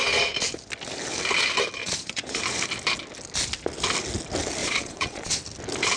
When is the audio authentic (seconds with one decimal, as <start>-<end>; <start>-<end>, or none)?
0.0-1.8; 2.4-4.6; 5.4-6.0